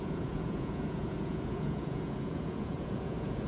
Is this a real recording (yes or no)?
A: no